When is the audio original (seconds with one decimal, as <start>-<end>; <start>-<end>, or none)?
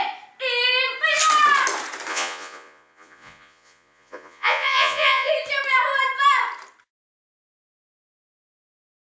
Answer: 0.0-2.1; 5.3-9.0